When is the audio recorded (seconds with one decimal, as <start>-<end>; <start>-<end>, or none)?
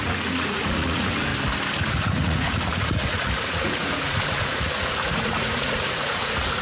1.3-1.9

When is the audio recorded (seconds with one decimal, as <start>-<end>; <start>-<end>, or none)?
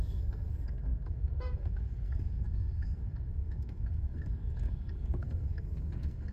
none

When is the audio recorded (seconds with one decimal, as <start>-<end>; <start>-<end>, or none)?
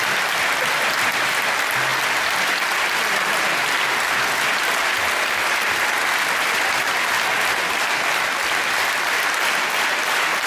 0.0-10.5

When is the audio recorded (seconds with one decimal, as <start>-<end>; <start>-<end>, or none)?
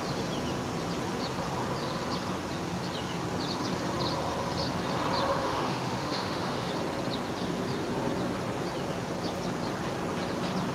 0.0-5.3; 6.7-10.7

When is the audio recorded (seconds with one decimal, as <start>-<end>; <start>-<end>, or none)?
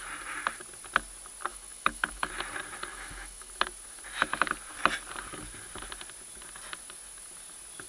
0.0-1.5; 2.3-2.9; 3.5-7.9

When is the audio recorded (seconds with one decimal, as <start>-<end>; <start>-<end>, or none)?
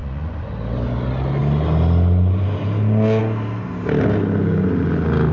0.5-5.3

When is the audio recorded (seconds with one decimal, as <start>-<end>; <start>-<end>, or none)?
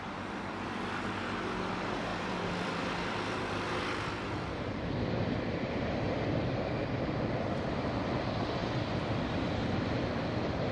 0.0-2.1; 6.6-8.6; 9.3-10.7